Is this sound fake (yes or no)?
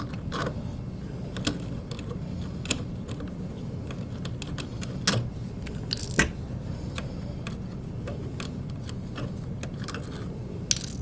no